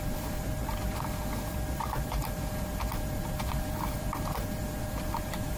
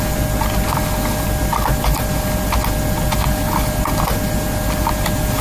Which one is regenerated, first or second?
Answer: first